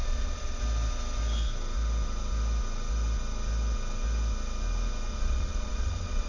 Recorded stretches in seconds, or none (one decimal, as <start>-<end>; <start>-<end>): 0.6-5.1